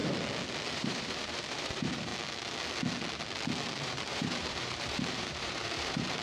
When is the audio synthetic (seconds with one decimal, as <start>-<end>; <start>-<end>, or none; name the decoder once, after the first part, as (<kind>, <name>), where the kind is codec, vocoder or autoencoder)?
0.7-2.1 (vocoder, BigVGAN v2); 3.8-6.2